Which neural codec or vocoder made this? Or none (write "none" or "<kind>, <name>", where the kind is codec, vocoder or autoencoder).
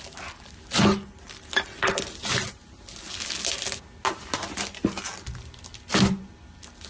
none